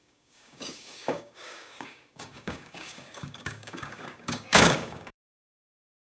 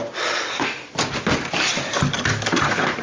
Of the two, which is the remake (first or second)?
first